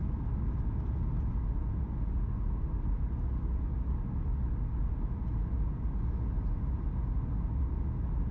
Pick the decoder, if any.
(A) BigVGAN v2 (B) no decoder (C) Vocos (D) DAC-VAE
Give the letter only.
B